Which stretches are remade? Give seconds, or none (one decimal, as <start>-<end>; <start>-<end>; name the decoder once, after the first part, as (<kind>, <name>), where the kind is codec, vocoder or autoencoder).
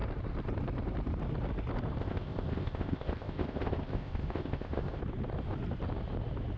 2.0-5.0 (codec, ZipCodec)